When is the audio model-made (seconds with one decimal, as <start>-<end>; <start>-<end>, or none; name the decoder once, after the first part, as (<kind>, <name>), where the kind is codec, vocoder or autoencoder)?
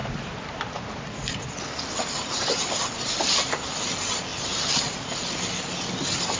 0.0-1.0 (vocoder, BigVGAN v2)